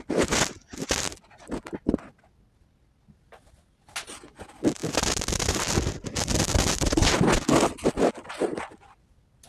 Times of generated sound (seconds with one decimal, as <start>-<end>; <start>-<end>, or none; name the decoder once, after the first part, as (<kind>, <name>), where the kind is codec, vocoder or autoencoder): none